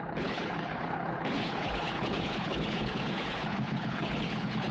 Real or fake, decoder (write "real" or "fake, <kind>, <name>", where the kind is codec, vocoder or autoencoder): fake, codec, HILCodec